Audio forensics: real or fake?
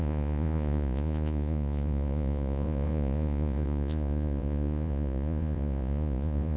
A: fake